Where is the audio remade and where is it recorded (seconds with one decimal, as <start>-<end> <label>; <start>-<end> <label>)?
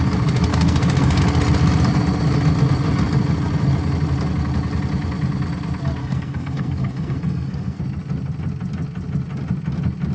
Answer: 0.0-0.5 recorded; 0.5-1.2 remade; 1.2-6.0 recorded; 6.0-7.8 remade; 7.8-10.1 recorded